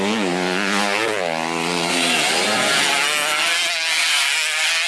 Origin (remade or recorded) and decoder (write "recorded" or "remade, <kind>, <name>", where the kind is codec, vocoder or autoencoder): recorded